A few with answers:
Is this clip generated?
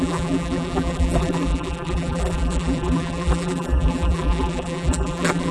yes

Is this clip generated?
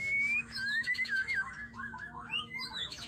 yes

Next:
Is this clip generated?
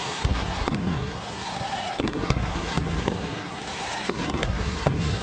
yes